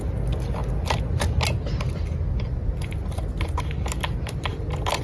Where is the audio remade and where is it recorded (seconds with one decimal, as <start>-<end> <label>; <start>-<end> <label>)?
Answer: 0.0-5.0 recorded